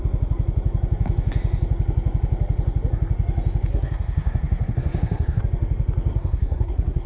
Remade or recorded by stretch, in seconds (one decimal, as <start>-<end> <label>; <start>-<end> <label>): 0.0-3.7 recorded; 3.7-5.4 remade; 5.4-6.1 recorded; 6.1-7.1 remade